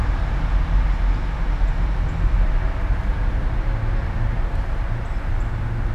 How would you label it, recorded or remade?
recorded